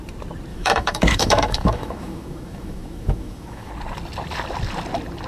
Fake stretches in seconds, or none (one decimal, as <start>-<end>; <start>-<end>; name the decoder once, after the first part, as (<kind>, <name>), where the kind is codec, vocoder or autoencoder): 0.5-3.7 (autoencoder, DAC-VAE)

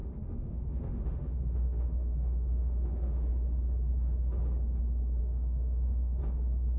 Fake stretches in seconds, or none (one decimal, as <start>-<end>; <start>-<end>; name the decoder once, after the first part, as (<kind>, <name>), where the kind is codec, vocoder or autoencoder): 0.0-3.3 (autoencoder, DAC-VAE); 5.2-6.2